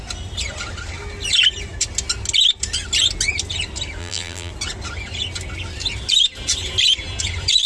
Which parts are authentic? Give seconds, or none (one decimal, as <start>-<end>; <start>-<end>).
0.0-4.0; 4.5-7.7